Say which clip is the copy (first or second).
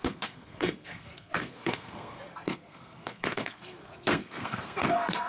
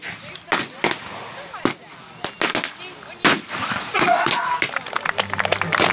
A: first